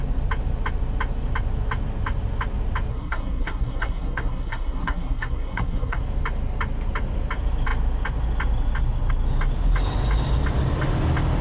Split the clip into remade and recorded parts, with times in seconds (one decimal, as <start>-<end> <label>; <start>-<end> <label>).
0.0-2.9 recorded; 2.9-6.0 remade; 6.0-11.4 recorded